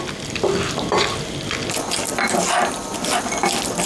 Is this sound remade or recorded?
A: recorded